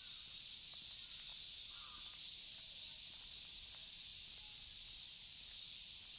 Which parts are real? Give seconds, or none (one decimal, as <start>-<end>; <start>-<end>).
1.3-2.6